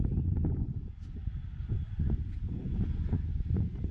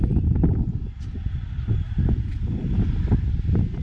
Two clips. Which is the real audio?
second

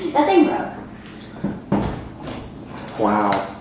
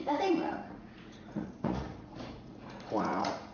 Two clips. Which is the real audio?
first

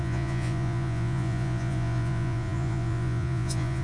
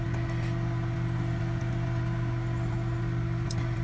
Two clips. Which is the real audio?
second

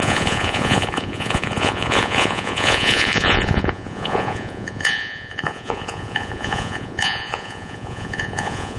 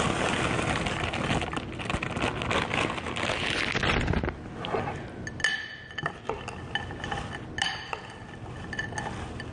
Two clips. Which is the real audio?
second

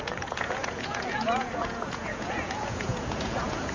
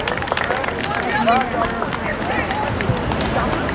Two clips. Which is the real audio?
second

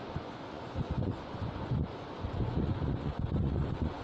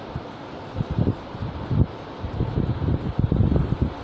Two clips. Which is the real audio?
second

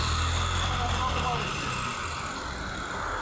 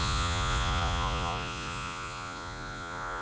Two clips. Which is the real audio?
first